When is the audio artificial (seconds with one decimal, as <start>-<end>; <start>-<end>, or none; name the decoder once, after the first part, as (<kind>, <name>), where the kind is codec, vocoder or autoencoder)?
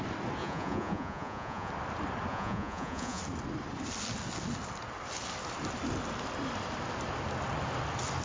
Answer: 0.4-1.7 (vocoder, Vocos); 2.3-3.2